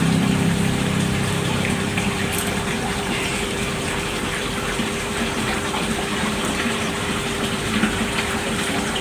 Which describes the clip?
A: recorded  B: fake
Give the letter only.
B